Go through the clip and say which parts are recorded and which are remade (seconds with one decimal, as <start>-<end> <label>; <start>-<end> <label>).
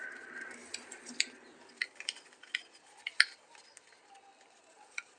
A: 0.0-5.2 recorded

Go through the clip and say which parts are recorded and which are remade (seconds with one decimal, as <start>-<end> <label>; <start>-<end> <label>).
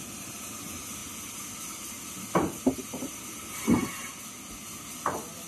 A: 0.0-5.5 recorded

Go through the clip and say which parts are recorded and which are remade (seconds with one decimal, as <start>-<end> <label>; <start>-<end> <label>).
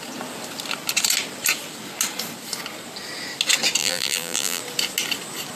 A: 0.0-3.8 recorded; 3.8-4.6 remade; 4.6-5.6 recorded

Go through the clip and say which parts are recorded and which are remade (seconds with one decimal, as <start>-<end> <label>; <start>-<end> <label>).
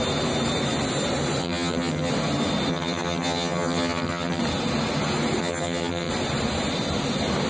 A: 0.0-1.4 recorded; 1.4-2.1 remade; 2.1-2.7 recorded; 2.7-4.4 remade; 4.4-5.4 recorded; 5.4-6.1 remade; 6.1-7.5 recorded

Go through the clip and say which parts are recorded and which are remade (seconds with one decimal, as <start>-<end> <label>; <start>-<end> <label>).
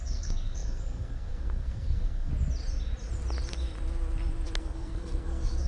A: 0.0-2.3 remade; 2.3-4.6 recorded; 4.6-5.7 remade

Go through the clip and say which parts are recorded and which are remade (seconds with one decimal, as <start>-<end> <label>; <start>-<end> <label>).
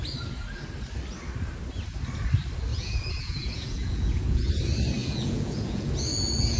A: 0.0-2.7 recorded; 2.7-4.5 remade; 4.5-5.0 recorded; 5.0-5.9 remade; 5.9-6.6 recorded